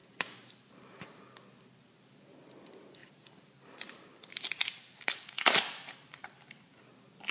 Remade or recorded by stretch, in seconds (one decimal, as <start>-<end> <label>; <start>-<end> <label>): 0.0-1.2 remade; 1.2-3.0 recorded; 3.0-6.8 remade; 6.8-7.3 recorded